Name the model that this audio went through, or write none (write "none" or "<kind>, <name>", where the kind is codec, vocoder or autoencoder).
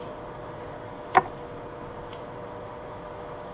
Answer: none